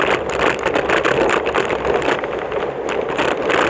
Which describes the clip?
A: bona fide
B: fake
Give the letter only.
A